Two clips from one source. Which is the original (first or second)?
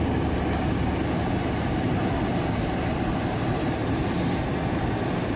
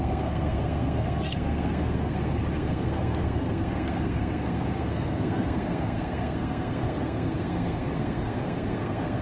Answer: first